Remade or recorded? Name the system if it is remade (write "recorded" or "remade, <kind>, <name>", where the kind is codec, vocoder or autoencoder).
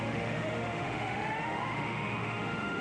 remade, autoencoder, DAC-VAE